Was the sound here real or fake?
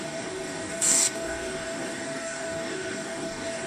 fake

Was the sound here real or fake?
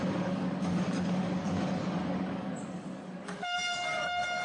fake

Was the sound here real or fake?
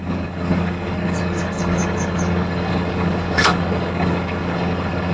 fake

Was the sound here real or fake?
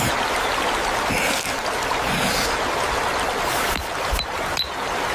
real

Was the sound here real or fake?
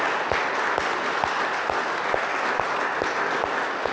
real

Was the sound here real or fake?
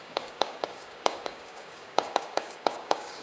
fake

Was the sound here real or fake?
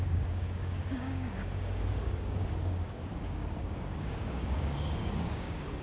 fake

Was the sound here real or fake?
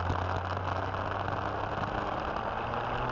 real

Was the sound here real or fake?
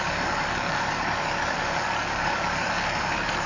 fake